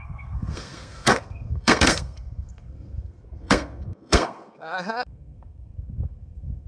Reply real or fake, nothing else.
fake